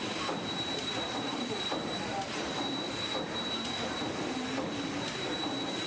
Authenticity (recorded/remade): remade